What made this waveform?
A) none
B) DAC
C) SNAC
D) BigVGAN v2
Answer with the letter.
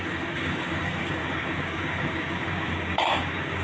B